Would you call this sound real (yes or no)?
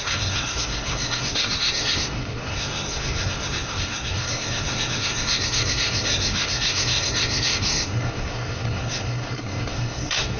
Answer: no